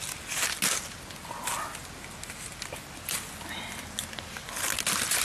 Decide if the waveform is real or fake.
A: real